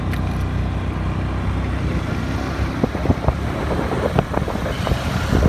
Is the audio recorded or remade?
recorded